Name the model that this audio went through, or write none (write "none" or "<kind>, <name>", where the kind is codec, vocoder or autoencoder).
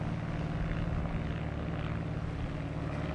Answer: none